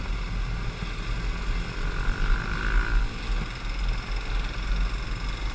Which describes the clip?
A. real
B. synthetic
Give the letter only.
A